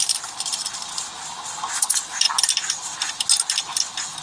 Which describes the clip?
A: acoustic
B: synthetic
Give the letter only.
A